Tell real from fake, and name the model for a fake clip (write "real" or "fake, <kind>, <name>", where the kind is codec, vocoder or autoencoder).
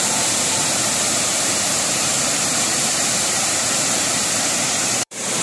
fake, vocoder, BigVGAN v2